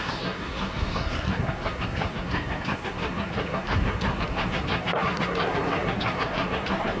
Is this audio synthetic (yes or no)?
yes